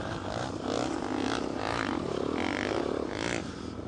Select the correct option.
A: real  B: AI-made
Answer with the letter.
A